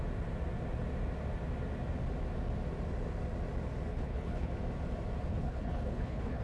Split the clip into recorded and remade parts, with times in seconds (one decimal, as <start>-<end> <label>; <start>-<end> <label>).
0.0-3.9 recorded; 3.9-4.5 remade; 4.5-5.3 recorded; 5.3-6.4 remade